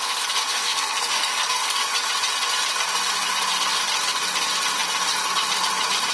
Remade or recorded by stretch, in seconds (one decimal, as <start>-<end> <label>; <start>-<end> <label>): 0.0-0.5 recorded; 0.5-1.8 remade; 1.8-6.1 recorded